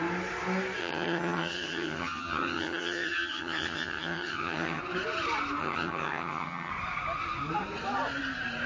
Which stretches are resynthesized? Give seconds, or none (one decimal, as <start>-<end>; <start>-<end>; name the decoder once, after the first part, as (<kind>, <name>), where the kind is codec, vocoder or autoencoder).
0.8-4.8 (vocoder, HiFi-GAN); 5.6-6.7